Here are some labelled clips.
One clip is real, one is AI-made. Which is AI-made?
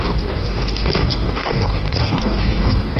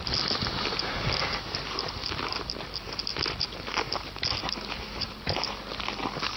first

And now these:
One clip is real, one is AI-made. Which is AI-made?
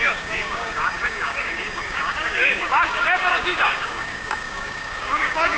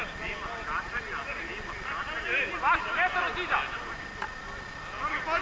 first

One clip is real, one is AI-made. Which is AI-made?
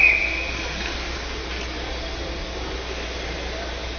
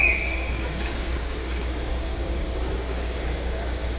second